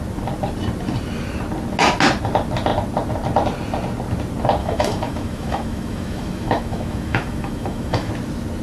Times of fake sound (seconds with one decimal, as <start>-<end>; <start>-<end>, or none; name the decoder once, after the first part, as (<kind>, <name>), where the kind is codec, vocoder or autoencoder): 4.6-8.1 (autoencoder, DAC-VAE)